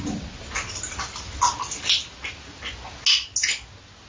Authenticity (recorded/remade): recorded